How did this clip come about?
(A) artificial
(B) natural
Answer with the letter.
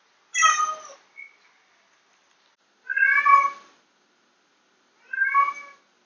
B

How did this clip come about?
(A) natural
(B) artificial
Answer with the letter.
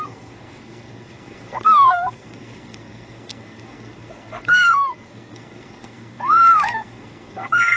B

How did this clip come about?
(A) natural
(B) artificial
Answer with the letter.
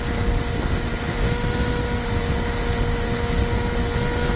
A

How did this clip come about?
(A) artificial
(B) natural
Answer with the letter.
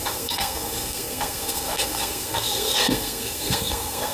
A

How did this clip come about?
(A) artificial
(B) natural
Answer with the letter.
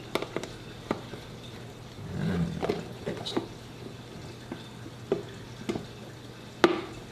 B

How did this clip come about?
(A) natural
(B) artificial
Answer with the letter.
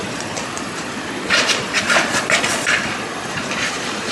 B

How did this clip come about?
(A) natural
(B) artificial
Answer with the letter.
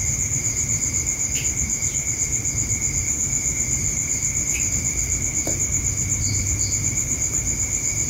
A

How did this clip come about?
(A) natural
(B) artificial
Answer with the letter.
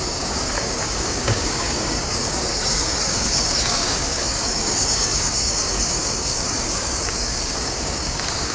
B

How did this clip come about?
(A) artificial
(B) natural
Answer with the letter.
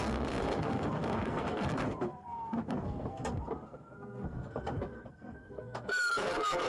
A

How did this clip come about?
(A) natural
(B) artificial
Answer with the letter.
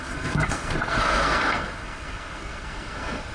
B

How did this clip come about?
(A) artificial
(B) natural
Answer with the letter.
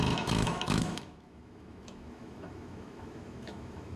A